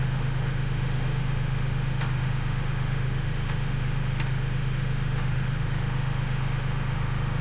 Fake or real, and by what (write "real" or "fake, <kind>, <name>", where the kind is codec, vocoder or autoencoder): fake, autoencoder, DAC-VAE